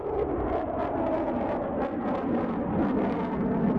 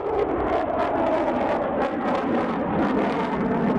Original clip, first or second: first